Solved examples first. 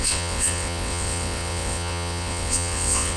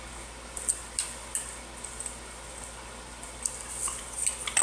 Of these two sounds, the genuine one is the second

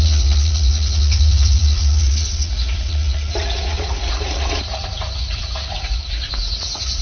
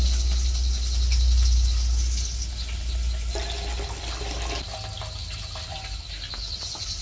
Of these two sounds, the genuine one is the second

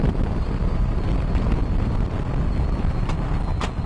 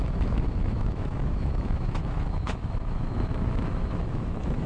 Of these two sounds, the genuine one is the first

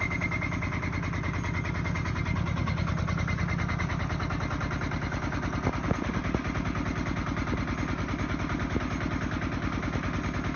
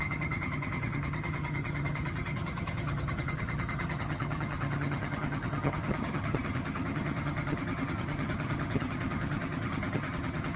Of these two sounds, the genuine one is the first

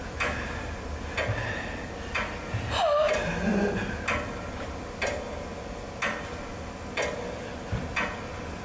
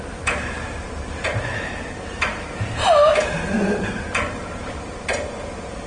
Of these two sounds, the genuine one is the first